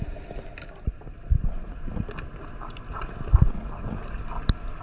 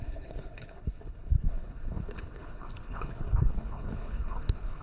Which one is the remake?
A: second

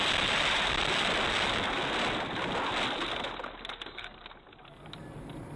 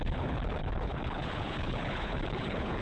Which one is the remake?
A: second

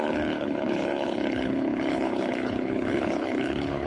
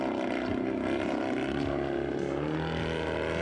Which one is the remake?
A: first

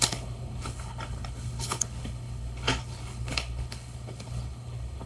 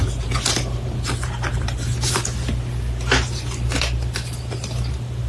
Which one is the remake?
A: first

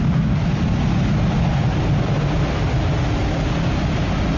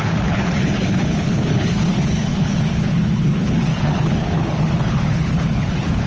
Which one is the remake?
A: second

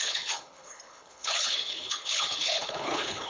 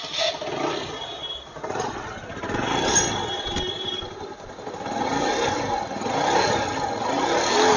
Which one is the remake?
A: first